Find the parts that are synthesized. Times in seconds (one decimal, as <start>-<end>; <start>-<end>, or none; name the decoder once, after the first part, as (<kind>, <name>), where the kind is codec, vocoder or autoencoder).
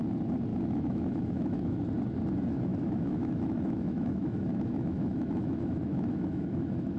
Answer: 0.5-1.8 (autoencoder, DAC-VAE); 2.7-7.0